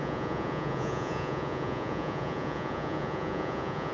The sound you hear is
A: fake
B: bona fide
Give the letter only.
A